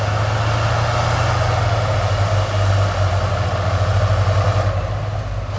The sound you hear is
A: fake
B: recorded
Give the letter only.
B